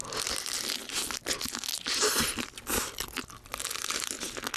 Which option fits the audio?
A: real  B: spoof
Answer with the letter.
A